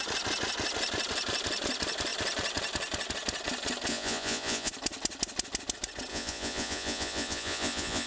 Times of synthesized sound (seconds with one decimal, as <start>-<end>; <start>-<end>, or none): 3.9-4.7; 6.1-8.1